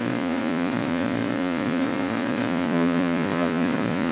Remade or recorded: remade